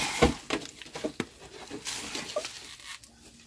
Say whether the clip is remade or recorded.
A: recorded